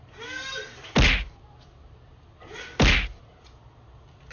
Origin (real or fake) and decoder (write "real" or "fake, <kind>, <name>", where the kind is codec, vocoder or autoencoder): real